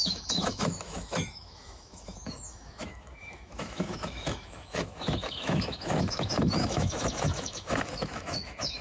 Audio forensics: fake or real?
fake